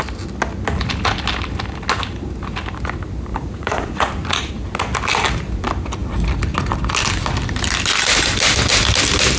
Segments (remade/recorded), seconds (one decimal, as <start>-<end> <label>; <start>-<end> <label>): 0.0-3.3 recorded; 3.3-4.5 remade; 4.5-9.4 recorded